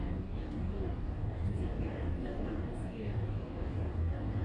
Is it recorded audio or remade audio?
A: remade